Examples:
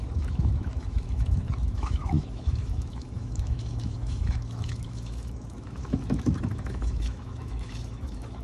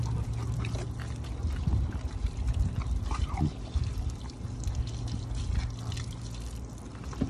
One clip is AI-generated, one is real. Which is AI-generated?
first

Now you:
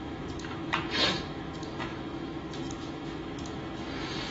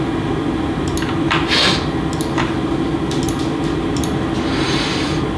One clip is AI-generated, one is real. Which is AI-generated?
first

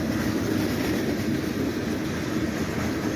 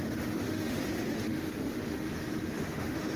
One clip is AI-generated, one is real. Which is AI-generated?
second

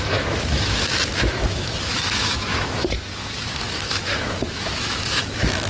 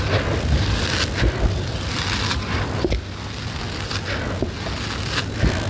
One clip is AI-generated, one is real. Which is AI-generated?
first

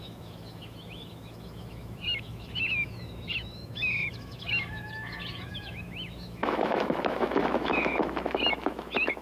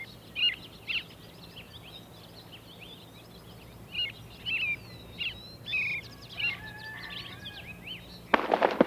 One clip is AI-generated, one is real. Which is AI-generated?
first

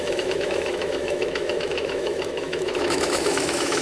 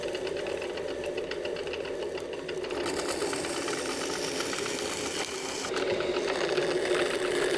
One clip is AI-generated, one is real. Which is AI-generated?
first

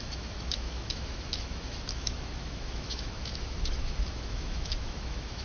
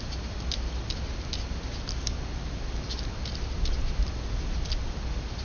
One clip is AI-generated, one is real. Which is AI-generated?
first